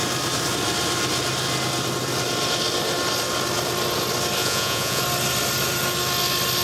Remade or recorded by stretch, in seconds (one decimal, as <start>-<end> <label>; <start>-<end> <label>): 0.0-4.4 recorded; 4.4-5.0 remade; 5.0-6.6 recorded